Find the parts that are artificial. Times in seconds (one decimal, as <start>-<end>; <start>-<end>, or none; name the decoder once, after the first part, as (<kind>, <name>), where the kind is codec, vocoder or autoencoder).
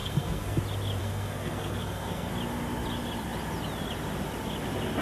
0.0-0.6 (codec, SNAC); 1.0-2.3